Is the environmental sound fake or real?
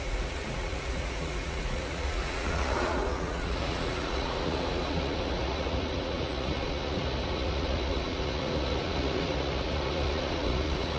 fake